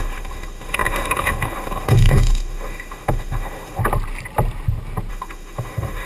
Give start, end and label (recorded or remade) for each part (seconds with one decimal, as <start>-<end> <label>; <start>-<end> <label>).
0.0-3.8 remade; 3.8-5.1 recorded; 5.1-6.1 remade